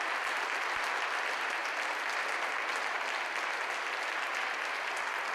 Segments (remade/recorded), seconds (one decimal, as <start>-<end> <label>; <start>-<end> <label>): 0.0-5.3 recorded